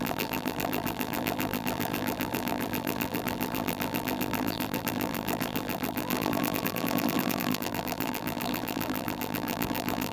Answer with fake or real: fake